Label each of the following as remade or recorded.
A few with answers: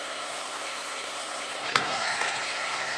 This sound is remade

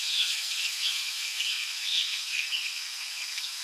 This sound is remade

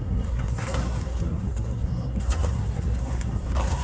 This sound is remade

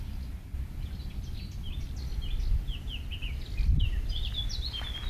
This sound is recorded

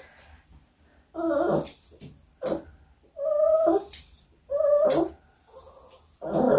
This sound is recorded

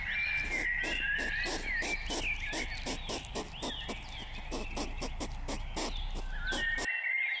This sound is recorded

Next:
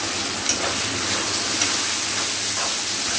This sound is recorded